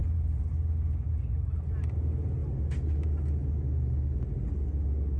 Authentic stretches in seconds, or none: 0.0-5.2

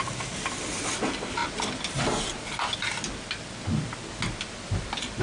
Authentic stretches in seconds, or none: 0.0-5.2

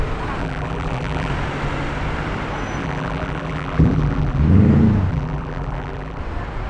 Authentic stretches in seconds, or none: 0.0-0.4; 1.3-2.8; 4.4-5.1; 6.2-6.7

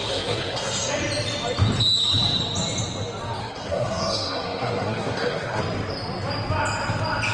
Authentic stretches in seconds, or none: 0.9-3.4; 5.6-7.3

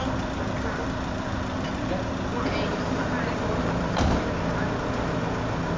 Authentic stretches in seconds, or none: 0.0-5.8

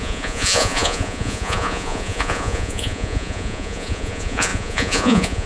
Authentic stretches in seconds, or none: none